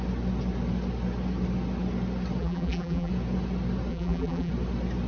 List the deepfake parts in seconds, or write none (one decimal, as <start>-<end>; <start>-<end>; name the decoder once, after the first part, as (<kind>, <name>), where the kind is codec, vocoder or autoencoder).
2.4-3.1 (vocoder, BigVGAN v2); 3.9-4.5